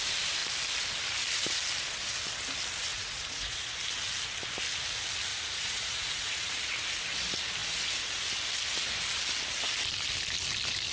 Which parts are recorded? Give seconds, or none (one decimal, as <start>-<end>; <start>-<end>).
0.0-2.9; 3.7-5.3; 6.5-10.9